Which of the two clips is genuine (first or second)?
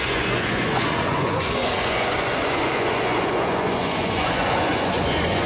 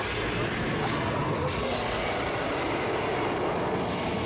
second